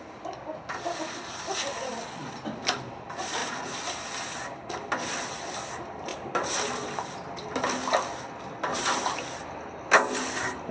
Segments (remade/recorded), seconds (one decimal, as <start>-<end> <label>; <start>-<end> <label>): 0.0-10.7 recorded